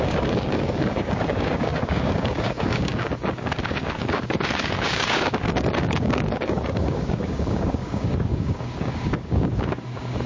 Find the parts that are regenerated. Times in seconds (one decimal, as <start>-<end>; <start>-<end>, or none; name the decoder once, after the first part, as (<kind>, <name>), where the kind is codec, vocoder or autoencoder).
0.0-10.3 (codec, DAC)